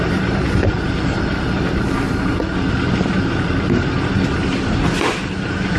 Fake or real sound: real